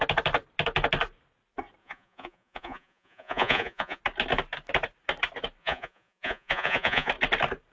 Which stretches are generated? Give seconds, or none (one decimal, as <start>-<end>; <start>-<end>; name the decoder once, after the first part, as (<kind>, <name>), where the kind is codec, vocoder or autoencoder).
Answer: 1.8-4.0 (vocoder, Vocos); 5.6-7.1